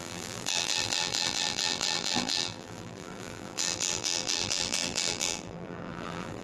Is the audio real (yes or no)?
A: no